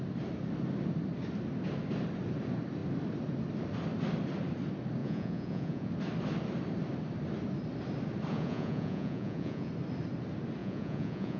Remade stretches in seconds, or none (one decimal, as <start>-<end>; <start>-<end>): 5.0-5.9; 8.3-9.7; 10.6-11.4